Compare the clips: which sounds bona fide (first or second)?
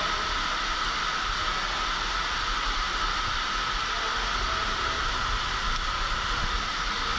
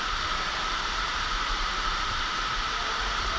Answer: first